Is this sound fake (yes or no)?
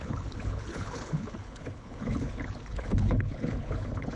yes